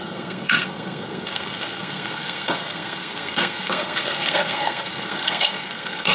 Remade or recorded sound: remade